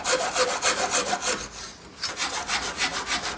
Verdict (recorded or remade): recorded